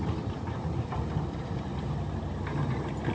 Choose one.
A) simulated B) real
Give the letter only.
B